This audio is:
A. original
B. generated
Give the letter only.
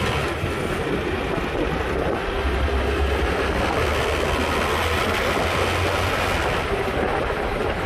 A